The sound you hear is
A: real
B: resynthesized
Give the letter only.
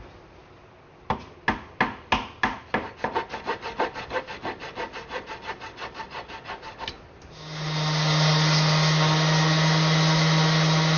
A